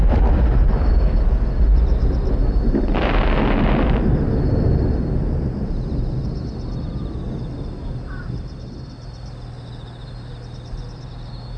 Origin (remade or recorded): recorded